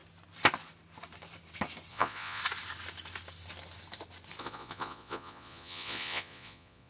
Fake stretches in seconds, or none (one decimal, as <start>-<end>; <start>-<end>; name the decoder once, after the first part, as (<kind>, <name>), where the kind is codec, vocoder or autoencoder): 1.9-2.4 (vocoder, Vocos); 4.4-6.9